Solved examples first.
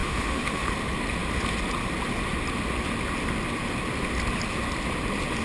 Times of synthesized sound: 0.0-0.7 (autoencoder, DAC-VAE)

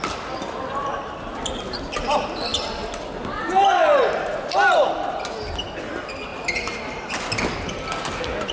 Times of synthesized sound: none

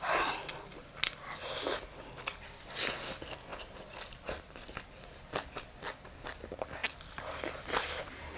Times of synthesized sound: 3.5-4.7 (vocoder, BigVGAN v2); 6.8-8.4